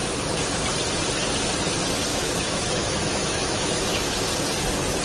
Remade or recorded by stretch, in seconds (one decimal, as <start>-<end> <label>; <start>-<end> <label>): 0.0-2.1 recorded; 2.1-4.3 remade; 4.3-5.0 recorded